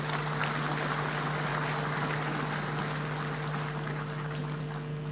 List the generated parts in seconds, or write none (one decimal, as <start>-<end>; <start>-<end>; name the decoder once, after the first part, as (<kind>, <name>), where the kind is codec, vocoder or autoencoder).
none